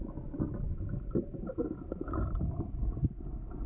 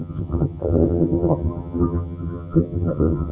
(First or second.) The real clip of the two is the first